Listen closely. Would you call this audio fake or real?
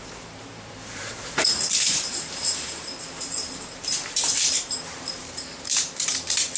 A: fake